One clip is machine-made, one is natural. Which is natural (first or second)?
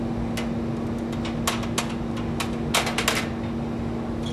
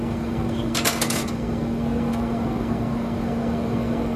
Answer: first